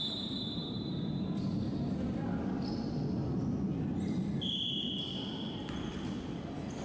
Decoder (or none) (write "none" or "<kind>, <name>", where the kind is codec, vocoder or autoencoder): none